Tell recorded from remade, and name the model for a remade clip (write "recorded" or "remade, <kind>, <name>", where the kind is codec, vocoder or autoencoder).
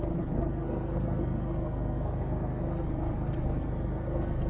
remade, codec, SNAC